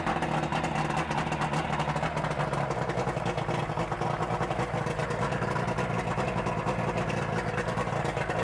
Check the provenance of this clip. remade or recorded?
recorded